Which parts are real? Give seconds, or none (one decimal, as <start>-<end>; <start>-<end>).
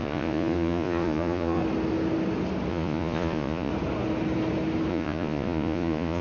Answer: 1.6-2.7; 3.7-4.9